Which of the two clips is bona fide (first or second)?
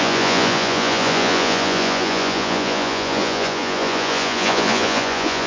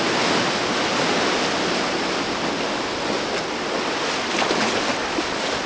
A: second